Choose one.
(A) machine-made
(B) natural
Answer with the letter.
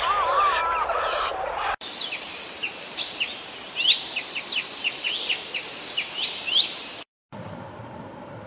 A